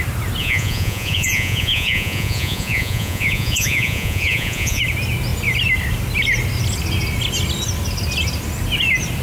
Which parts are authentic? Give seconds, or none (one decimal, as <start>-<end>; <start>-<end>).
0.0-0.4; 4.8-9.2